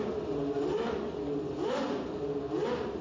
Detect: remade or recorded recorded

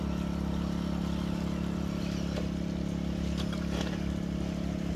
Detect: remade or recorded recorded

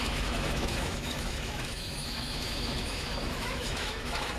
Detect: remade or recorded remade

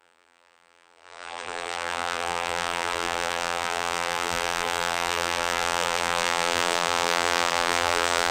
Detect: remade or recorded remade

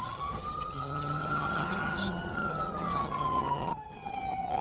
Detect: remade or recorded remade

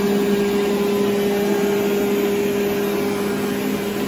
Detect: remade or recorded recorded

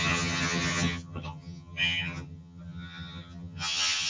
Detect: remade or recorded remade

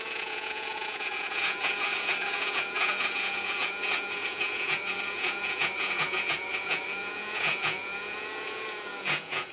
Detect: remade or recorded remade